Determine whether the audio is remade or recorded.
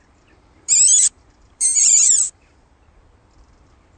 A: remade